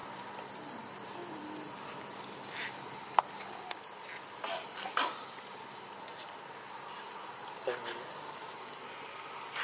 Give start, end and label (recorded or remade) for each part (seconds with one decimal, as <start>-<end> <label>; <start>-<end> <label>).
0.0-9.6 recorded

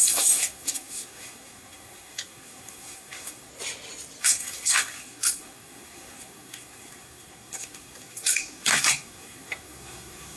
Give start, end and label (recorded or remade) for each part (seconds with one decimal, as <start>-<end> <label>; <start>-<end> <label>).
0.0-3.5 remade; 3.5-4.2 recorded; 4.2-10.4 remade

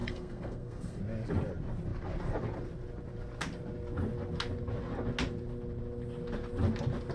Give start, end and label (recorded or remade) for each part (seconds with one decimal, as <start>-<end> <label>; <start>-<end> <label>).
0.0-1.0 remade; 1.0-7.1 recorded